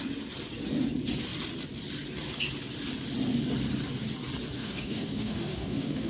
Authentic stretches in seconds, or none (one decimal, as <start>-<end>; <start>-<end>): 0.0-4.6